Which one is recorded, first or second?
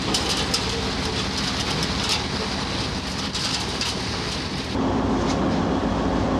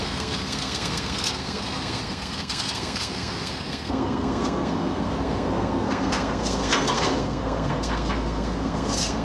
first